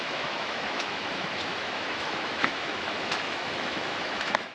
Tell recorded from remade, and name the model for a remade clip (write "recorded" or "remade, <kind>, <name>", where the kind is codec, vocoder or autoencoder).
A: remade, autoencoder, DAC-VAE